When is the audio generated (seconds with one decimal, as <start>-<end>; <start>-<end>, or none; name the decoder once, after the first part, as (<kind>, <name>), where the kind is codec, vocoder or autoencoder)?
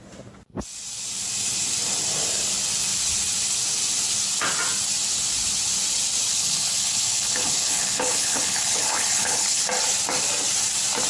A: 6.3-9.6 (codec, HILCodec)